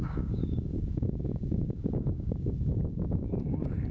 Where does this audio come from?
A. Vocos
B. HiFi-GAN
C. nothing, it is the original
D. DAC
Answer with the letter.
D